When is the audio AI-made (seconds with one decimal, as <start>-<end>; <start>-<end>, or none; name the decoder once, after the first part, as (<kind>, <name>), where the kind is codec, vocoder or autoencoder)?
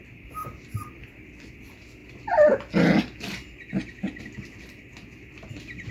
0.0-0.4 (vocoder, BigVGAN v2); 0.9-2.0; 5.5-5.9